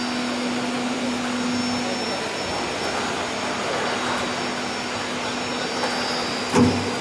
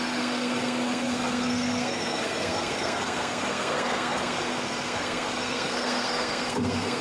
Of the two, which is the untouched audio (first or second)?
first